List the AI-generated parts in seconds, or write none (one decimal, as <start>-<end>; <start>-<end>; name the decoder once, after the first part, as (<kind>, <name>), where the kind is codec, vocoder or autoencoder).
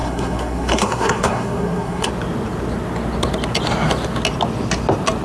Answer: 0.0-2.1 (codec, SNAC)